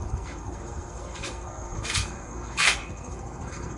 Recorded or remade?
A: remade